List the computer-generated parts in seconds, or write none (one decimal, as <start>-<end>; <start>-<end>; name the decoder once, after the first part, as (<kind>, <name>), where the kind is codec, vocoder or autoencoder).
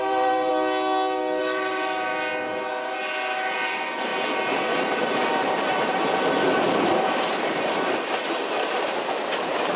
0.0-0.5 (vocoder, BigVGAN v2); 1.4-2.1; 3.5-4.1; 5.3-9.8